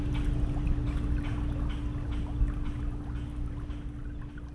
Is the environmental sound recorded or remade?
recorded